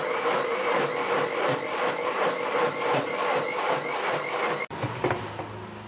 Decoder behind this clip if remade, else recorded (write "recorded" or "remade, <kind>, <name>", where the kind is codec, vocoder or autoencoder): recorded